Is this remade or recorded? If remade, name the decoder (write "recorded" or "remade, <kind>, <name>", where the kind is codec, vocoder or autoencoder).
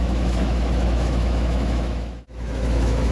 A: remade, autoencoder, DAC-VAE